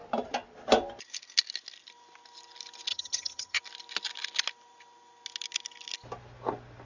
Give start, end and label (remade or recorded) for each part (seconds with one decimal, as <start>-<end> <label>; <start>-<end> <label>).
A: 0.0-2.9 recorded; 2.9-3.6 remade; 3.6-6.9 recorded